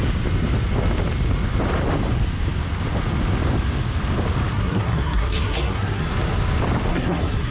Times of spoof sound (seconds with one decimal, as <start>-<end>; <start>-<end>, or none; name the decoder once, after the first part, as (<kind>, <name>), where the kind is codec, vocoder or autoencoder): 4.5-6.1 (codec, SNAC); 6.9-7.5